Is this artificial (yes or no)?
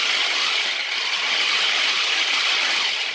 yes